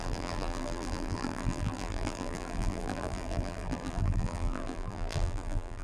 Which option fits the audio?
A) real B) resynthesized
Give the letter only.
B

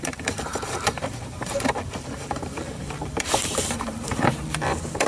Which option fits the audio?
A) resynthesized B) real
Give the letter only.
A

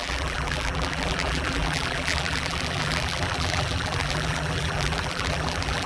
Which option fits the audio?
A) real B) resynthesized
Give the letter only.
B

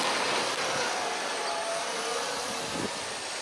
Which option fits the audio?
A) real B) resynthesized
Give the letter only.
A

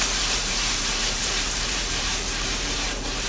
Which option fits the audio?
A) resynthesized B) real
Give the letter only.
A